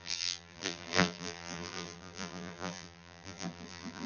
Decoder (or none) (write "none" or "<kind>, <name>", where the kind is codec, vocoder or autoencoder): vocoder, BigVGAN v2